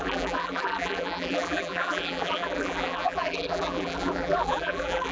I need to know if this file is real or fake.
fake